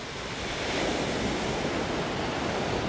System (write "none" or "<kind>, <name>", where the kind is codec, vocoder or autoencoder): none